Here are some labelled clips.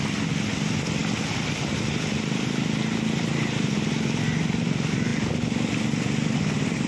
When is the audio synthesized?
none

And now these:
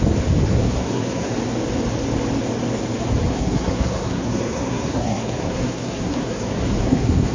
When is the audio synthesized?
0.5-1.3 (codec, SNAC); 3.3-7.3